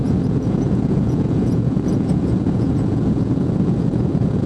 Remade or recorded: remade